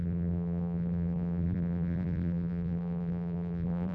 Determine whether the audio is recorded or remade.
remade